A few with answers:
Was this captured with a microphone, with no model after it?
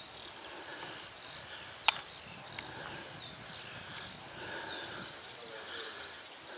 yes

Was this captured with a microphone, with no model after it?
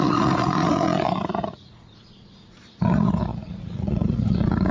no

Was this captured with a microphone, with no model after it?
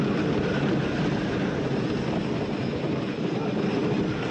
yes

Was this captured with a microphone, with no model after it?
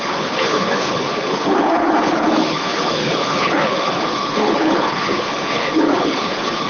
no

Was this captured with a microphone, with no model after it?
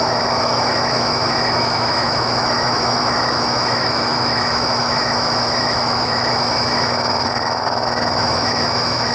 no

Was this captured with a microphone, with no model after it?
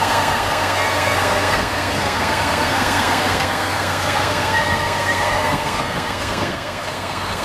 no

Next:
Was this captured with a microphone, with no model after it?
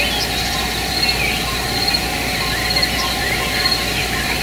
yes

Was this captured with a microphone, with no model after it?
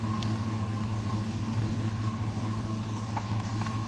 no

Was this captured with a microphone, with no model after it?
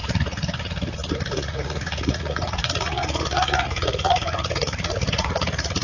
no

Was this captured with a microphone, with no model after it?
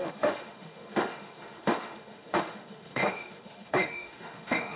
no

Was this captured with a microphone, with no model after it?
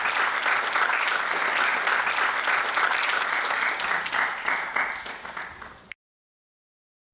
yes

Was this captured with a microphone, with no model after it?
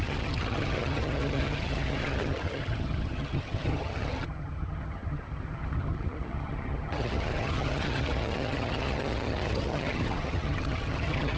no